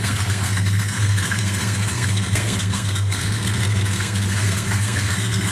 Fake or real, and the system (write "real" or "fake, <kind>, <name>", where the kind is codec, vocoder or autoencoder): fake, codec, SNAC